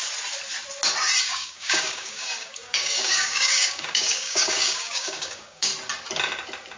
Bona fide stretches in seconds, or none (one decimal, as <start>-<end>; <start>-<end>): 0.0-1.2; 5.7-6.8